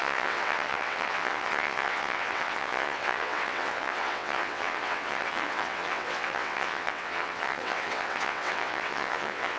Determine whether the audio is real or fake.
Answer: fake